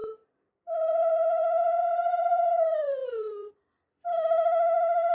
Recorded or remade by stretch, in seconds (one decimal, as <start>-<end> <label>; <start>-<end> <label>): 0.0-5.1 remade